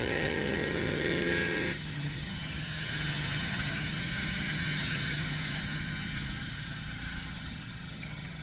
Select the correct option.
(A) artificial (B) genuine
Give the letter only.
A